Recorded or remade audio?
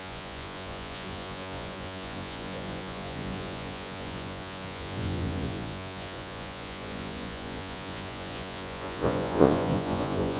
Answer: remade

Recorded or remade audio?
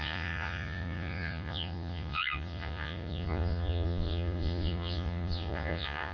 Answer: remade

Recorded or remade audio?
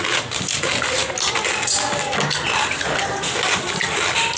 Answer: recorded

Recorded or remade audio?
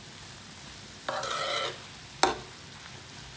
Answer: recorded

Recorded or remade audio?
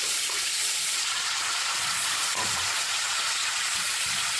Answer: remade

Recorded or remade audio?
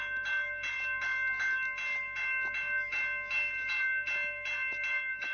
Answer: recorded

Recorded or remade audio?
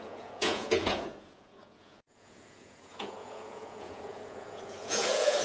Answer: remade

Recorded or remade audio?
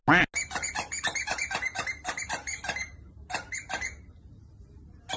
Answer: recorded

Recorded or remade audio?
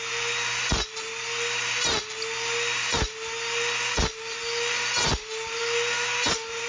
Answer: recorded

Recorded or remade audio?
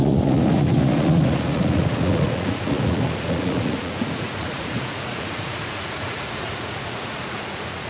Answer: remade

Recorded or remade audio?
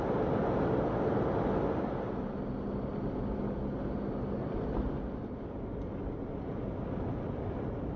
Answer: recorded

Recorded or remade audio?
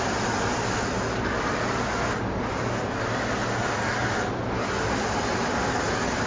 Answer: recorded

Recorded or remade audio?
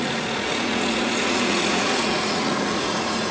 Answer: remade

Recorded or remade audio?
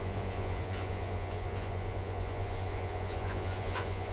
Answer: remade